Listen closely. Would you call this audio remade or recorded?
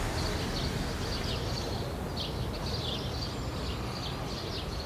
recorded